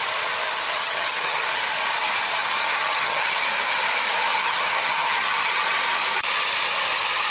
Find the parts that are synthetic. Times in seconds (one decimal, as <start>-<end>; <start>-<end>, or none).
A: 0.7-1.4; 2.4-3.4; 4.4-5.5